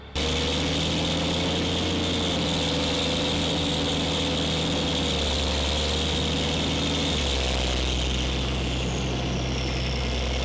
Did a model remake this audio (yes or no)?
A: no